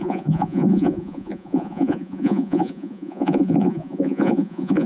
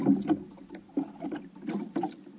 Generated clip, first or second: first